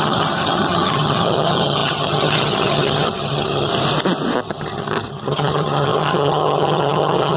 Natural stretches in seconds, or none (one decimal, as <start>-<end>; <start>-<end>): 3.7-4.4